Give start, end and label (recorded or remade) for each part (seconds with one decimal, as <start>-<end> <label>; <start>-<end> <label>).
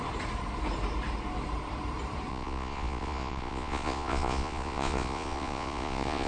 0.0-2.3 recorded; 2.3-6.3 remade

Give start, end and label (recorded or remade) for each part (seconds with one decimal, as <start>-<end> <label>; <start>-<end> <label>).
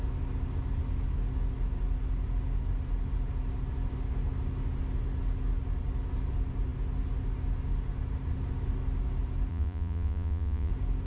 0.0-9.5 recorded; 9.5-10.7 remade; 10.7-11.1 recorded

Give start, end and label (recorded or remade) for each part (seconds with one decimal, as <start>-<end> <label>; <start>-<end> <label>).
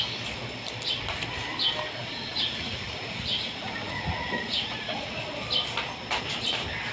0.0-2.0 recorded; 2.0-5.2 remade; 5.2-6.9 recorded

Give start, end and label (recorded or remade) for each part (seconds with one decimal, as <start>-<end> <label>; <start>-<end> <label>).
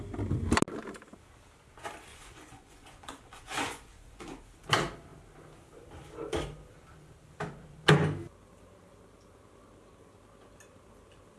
0.0-2.1 recorded; 2.1-4.3 remade; 4.3-11.4 recorded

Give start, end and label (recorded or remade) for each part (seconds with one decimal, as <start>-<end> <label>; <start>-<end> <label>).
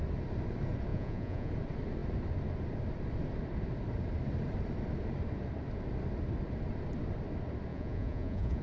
0.0-0.9 recorded; 0.9-1.5 remade; 1.5-7.7 recorded; 7.7-8.6 remade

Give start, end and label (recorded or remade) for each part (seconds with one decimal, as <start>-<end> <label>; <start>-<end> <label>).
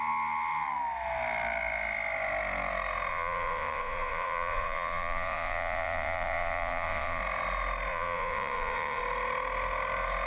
0.0-3.1 recorded; 3.1-7.2 remade; 7.2-7.9 recorded; 7.9-9.0 remade; 9.0-10.3 recorded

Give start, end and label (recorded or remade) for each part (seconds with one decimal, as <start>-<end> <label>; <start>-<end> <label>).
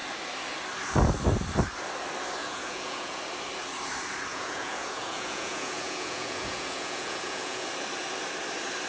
0.0-2.4 recorded; 2.4-3.2 remade; 3.2-4.3 recorded; 4.3-7.7 remade; 7.7-8.9 recorded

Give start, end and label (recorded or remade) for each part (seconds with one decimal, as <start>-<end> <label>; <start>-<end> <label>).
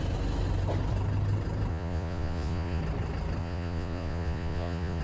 0.0-1.7 recorded; 1.7-2.8 remade; 2.8-3.4 recorded; 3.4-5.0 remade